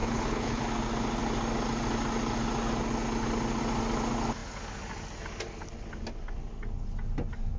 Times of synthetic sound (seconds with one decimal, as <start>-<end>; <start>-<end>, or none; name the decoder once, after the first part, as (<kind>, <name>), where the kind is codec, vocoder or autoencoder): 0.0-0.6 (codec, HILCodec)